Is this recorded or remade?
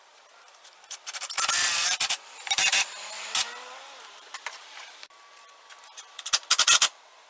remade